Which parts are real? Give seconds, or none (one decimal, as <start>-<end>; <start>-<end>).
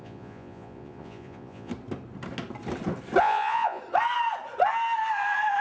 1.7-3.2; 3.8-5.6